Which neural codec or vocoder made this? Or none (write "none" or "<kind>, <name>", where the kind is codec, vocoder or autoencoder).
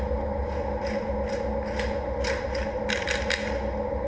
none